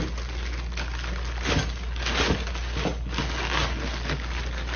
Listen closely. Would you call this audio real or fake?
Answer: real